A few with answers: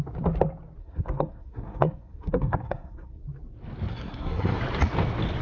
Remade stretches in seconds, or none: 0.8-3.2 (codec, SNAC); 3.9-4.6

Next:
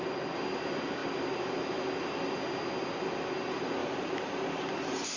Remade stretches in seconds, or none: 3.8-4.7 (vocoder, BigVGAN v2)

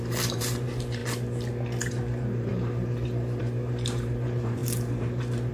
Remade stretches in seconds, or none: 0.0-1.0 (vocoder, BigVGAN v2); 1.9-5.5

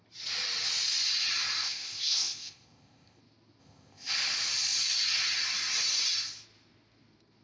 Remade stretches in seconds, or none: 1.6-3.2 (codec, ZipCodec); 3.6-4.1